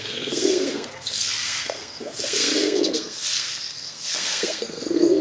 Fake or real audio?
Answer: fake